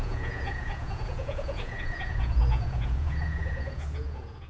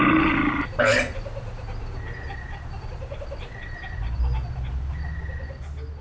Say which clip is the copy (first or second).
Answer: first